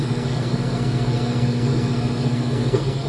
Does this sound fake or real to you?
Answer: fake